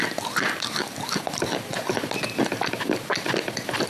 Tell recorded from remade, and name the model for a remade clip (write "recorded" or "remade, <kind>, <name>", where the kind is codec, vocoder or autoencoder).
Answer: recorded